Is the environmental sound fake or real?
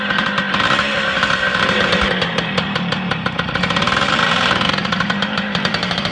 fake